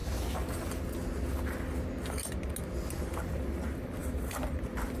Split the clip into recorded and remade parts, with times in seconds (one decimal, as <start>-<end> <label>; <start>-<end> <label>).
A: 0.0-3.0 recorded; 3.0-5.0 remade